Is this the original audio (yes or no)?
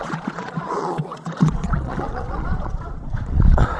no